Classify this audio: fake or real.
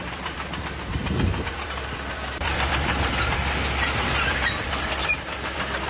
fake